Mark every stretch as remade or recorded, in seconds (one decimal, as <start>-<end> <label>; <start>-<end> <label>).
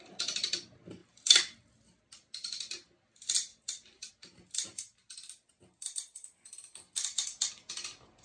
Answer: 0.0-1.0 recorded; 1.0-2.0 remade; 2.0-3.5 recorded; 3.5-4.1 remade; 4.1-8.2 recorded